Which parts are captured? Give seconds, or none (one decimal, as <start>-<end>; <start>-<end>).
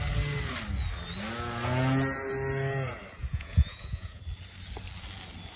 0.0-3.2; 4.2-5.6